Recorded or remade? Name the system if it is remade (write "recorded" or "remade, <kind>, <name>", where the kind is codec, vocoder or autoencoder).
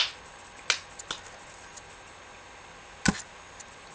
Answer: recorded